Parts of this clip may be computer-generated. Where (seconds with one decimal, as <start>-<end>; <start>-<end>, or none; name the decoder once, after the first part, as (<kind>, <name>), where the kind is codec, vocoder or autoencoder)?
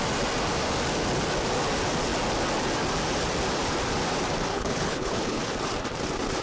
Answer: 4.5-5.4 (codec, HILCodec)